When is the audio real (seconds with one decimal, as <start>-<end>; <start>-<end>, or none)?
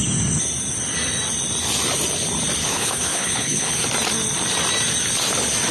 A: 0.0-2.6; 3.7-5.7